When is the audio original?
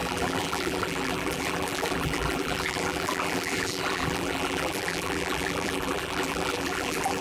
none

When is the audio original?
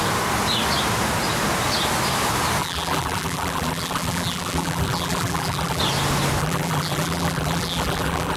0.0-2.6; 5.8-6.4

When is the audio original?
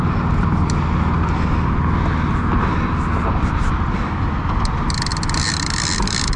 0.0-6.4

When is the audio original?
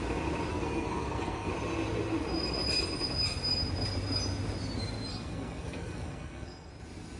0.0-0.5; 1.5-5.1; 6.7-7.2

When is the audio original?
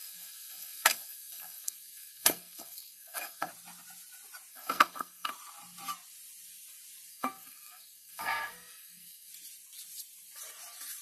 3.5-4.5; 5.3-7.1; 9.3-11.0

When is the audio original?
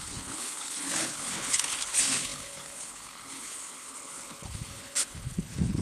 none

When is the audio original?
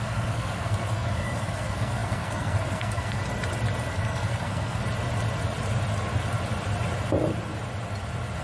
3.2-3.9; 4.8-8.4